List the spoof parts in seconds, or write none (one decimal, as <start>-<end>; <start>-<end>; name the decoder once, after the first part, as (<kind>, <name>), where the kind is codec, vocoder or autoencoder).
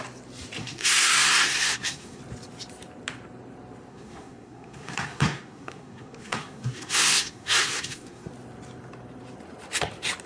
0.6-2.2 (codec, SNAC); 3.9-8.3